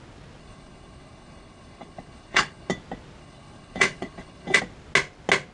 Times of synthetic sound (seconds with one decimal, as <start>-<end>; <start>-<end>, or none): 0.4-2.7; 3.2-4.6